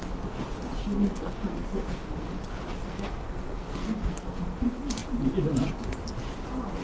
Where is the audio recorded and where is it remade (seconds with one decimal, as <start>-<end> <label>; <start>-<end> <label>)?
0.0-0.8 recorded; 0.8-2.4 remade; 2.4-2.8 recorded; 2.8-4.6 remade; 4.6-6.8 recorded